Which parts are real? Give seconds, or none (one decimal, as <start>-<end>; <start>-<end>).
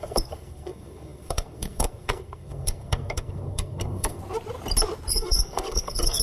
4.2-5.1